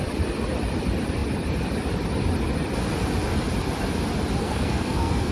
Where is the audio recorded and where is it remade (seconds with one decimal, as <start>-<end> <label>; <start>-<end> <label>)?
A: 0.0-4.4 recorded; 4.4-5.3 remade